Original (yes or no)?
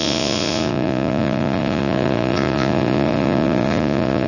no